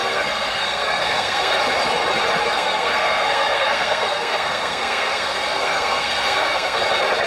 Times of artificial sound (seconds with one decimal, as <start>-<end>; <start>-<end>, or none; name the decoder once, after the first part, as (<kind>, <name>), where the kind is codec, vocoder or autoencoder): 0.0-1.6 (codec, SNAC); 2.4-6.8